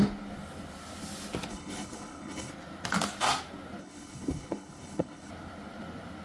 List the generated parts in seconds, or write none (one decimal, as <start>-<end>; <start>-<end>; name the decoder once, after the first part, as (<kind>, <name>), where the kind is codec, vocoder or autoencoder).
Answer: 1.5-2.5 (codec, HILCodec); 3.8-5.3